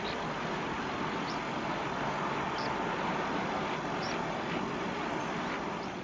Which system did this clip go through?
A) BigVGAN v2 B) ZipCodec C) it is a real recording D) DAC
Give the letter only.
C